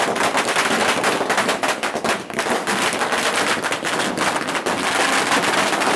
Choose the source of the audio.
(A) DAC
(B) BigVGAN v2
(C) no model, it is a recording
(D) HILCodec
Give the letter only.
C